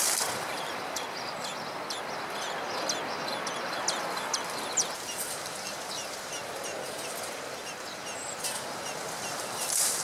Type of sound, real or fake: real